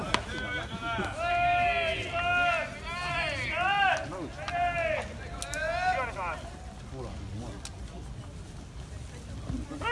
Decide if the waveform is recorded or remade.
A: recorded